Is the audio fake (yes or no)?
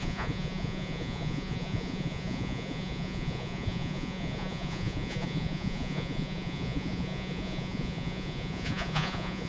yes